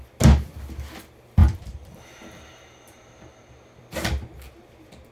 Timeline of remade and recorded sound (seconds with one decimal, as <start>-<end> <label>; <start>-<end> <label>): 0.0-1.4 recorded; 1.4-3.5 remade; 3.5-5.1 recorded